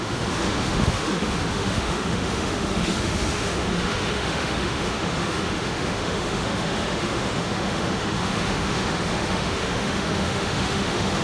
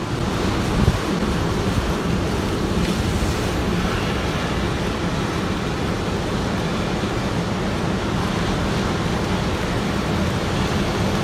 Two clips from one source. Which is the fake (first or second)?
first